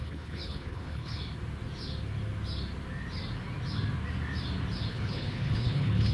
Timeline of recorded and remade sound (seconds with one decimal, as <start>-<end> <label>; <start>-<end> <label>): 0.0-1.2 remade; 1.2-4.9 recorded; 4.9-6.1 remade